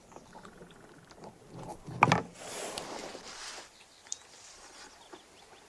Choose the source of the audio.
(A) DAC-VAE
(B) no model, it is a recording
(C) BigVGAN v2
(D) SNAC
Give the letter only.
B